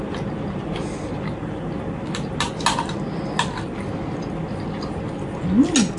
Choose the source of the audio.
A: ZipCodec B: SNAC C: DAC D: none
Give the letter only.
D